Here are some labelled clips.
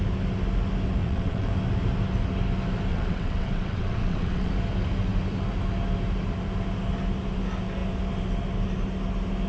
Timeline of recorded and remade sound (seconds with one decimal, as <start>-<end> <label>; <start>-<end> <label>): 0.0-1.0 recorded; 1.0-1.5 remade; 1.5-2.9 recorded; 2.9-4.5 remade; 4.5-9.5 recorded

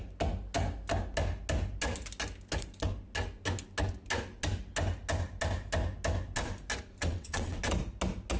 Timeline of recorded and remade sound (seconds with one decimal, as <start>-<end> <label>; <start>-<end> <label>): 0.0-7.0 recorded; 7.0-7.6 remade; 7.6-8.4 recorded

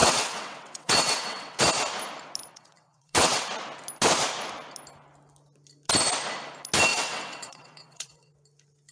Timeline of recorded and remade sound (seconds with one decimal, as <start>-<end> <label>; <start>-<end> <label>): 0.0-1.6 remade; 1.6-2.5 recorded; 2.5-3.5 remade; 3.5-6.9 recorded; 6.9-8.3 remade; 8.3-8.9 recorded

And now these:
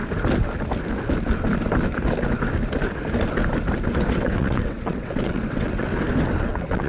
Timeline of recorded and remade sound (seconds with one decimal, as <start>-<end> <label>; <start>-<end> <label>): 0.0-4.1 recorded; 4.1-5.9 remade; 5.9-6.4 recorded; 6.4-6.9 remade

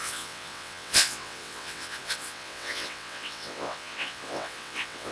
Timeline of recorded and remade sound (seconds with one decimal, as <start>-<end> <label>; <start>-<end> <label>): 0.0-5.1 remade